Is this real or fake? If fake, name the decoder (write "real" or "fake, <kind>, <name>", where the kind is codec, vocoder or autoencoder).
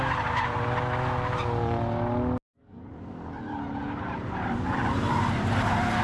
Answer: real